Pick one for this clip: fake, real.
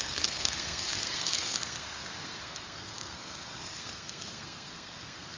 fake